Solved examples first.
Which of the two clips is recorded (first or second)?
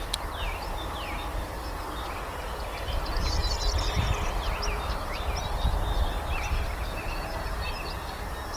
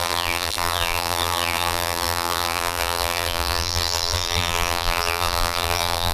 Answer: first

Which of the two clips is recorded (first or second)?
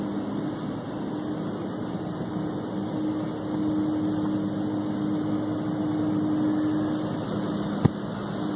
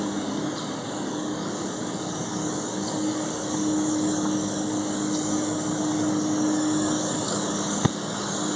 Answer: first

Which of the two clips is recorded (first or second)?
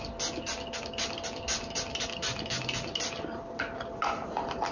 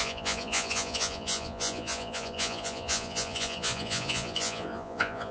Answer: first